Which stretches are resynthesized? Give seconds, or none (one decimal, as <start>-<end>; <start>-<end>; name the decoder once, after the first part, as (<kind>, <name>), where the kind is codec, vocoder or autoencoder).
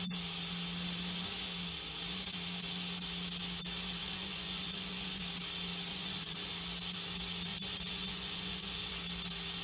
4.0-5.2 (vocoder, Vocos); 5.9-6.5; 7.5-8.9